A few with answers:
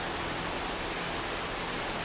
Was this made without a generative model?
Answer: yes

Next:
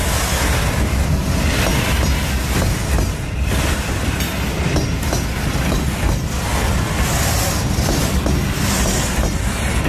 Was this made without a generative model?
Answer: yes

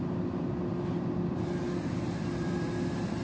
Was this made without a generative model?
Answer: yes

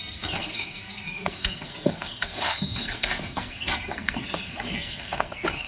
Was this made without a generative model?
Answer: no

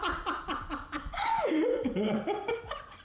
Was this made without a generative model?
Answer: no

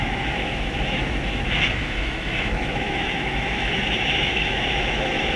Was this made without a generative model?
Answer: no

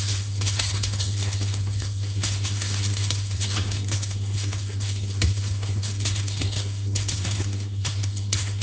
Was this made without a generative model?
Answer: no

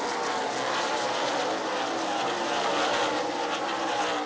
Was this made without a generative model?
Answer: yes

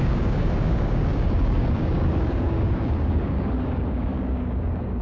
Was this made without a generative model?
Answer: no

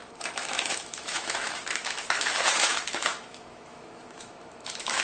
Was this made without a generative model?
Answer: no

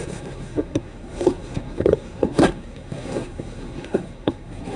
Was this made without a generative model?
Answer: no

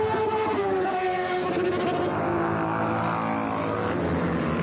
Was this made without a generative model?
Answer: yes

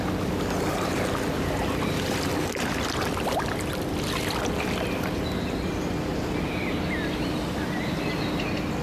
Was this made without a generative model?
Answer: yes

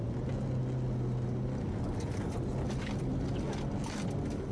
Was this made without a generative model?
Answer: yes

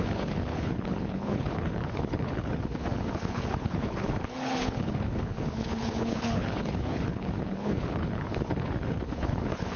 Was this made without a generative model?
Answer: no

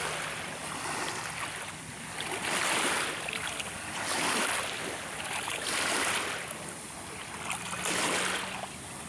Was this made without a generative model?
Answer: yes